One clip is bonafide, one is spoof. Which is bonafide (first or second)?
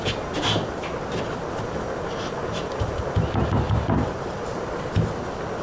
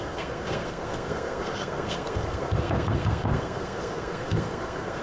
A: first